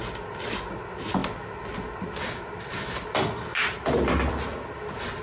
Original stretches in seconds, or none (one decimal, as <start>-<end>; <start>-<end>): 0.0-5.2